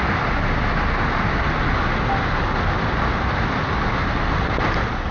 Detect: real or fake real